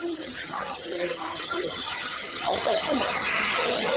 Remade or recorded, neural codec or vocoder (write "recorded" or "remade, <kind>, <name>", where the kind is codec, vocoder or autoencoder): remade, vocoder, HiFi-GAN